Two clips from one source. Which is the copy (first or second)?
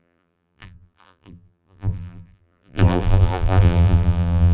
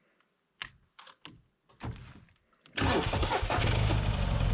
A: first